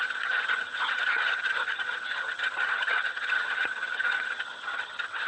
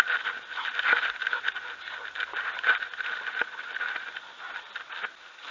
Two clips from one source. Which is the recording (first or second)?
second